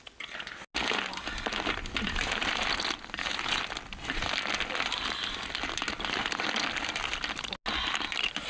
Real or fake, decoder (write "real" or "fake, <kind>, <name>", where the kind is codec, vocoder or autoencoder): real